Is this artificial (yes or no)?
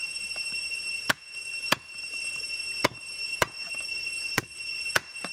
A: yes